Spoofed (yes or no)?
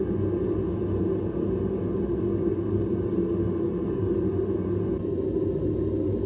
no